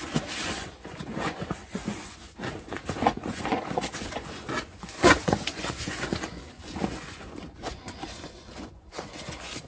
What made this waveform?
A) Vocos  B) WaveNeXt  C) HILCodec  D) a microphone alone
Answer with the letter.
A